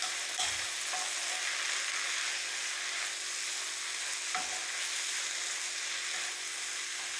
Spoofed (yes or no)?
no